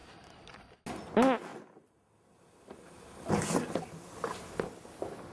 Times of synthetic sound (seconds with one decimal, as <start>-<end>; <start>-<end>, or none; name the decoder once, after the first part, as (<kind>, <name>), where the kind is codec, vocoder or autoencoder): none